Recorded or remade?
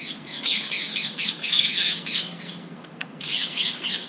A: remade